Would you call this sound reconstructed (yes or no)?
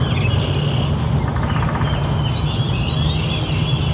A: no